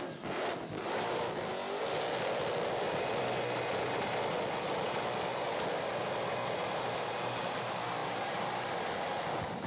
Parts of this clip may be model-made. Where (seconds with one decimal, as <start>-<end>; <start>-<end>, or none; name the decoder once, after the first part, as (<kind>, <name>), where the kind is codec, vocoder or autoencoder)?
none